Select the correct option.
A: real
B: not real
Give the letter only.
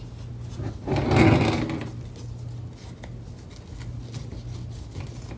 A